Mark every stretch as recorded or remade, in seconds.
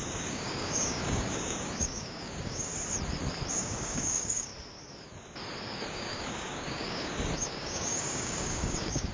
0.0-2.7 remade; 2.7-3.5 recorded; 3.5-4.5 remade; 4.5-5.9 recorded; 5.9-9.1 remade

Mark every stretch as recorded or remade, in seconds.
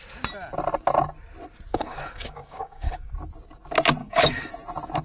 0.0-1.7 recorded; 1.7-3.1 remade; 3.1-4.0 recorded; 4.0-4.5 remade; 4.5-5.0 recorded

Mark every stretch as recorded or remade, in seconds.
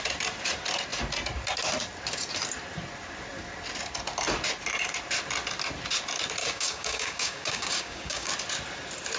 0.0-6.4 recorded; 6.4-8.3 remade; 8.3-9.2 recorded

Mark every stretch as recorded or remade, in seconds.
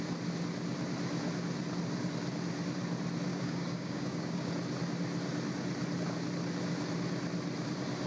0.0-3.3 recorded; 3.3-4.5 remade; 4.5-8.1 recorded